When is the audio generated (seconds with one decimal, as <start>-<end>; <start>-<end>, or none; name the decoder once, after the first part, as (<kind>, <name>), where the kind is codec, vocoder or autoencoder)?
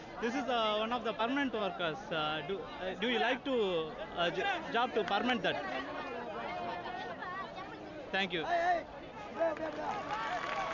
none